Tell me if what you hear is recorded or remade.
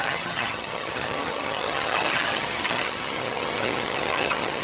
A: remade